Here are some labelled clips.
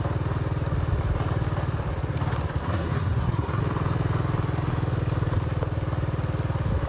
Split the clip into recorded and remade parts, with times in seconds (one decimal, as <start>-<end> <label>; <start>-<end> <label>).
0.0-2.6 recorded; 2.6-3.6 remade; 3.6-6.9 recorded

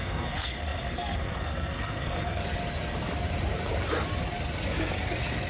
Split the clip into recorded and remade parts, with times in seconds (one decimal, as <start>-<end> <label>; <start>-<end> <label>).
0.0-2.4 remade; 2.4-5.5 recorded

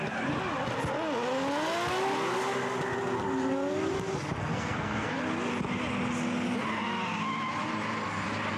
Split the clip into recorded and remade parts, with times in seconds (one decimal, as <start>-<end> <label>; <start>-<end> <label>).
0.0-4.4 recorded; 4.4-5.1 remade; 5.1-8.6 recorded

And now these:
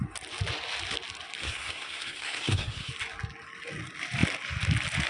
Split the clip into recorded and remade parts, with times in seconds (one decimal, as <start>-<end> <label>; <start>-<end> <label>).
0.0-1.4 recorded; 1.4-2.9 remade; 2.9-5.1 recorded

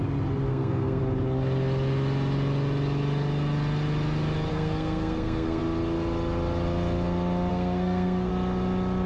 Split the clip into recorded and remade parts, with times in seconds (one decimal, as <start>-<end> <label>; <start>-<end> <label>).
0.0-0.5 recorded; 0.5-1.0 remade; 1.0-4.5 recorded; 4.5-5.6 remade; 5.6-7.5 recorded; 7.5-8.3 remade; 8.3-9.1 recorded

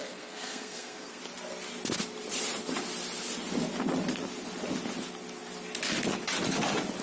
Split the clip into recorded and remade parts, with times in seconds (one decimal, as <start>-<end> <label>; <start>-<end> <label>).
0.0-1.2 remade; 1.2-7.0 recorded